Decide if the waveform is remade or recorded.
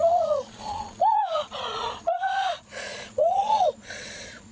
remade